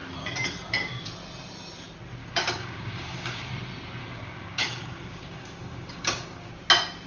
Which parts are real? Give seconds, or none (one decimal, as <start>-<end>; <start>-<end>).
0.0-2.2; 3.5-4.0; 6.5-7.1